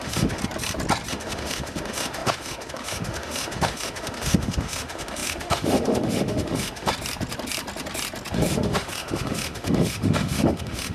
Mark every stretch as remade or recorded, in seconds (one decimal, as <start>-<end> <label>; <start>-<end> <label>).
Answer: 0.0-0.4 remade; 0.4-1.1 recorded; 1.1-6.9 remade; 6.9-8.3 recorded; 8.3-10.9 remade